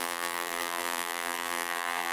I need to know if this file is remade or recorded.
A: remade